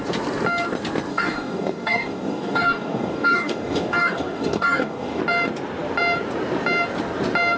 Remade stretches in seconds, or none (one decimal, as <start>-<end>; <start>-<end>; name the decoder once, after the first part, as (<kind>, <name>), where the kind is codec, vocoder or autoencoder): 1.1-5.2 (codec, DAC)